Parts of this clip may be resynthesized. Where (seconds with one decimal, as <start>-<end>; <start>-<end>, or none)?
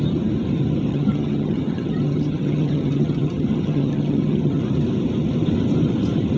0.9-4.6